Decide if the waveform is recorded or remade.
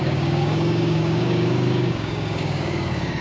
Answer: remade